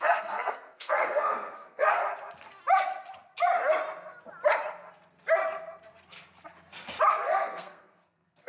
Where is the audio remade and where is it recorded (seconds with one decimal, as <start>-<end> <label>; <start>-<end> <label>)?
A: 0.0-2.0 remade; 2.0-7.1 recorded; 7.1-8.5 remade